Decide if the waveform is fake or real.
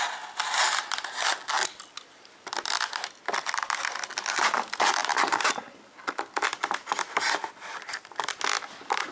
real